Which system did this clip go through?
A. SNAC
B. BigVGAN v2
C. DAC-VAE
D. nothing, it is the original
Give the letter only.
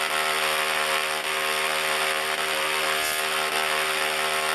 D